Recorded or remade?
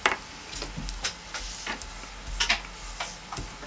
recorded